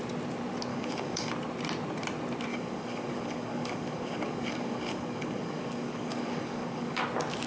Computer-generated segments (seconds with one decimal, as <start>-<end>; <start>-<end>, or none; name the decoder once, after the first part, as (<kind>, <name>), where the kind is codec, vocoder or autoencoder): 0.7-1.3 (codec, DAC); 2.5-7.0